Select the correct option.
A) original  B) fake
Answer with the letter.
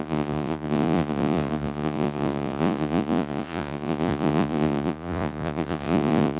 B